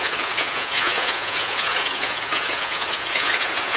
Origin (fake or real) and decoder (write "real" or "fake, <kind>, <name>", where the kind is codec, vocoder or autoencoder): fake, vocoder, Vocos